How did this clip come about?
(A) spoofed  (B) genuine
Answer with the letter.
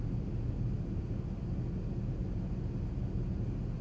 B